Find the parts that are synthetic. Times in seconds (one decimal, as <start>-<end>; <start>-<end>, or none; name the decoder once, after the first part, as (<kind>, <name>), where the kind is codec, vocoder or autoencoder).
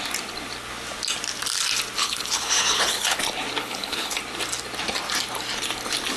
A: 2.0-3.2 (codec, HILCodec); 3.6-4.2